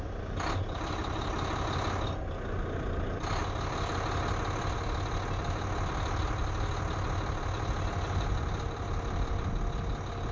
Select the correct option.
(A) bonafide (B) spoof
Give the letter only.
A